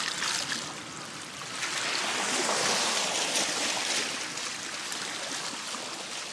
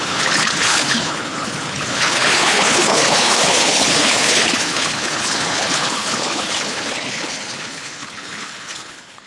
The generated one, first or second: second